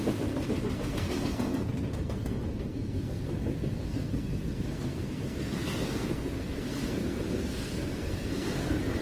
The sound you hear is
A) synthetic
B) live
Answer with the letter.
A